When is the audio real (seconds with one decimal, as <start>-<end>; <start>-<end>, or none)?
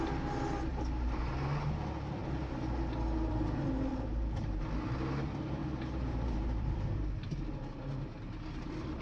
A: 0.0-0.7; 1.3-3.9; 4.6-5.6; 7.1-9.0